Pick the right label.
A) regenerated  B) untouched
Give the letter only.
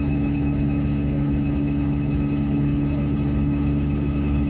A